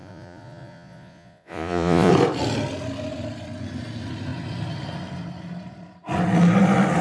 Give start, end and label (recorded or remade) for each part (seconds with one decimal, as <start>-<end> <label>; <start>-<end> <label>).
0.0-2.1 remade; 2.1-7.0 recorded